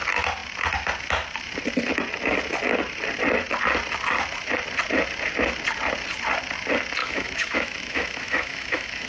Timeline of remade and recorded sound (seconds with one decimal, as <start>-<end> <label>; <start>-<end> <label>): 0.0-7.0 recorded; 7.0-9.1 remade